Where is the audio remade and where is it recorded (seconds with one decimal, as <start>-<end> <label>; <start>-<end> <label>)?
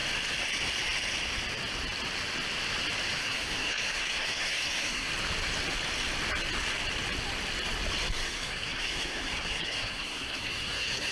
0.0-3.2 recorded; 3.2-5.1 remade; 5.1-8.1 recorded; 8.1-11.1 remade